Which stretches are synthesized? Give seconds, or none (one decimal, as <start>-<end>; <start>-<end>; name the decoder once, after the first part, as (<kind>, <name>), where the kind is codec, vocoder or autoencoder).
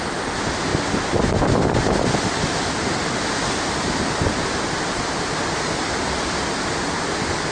none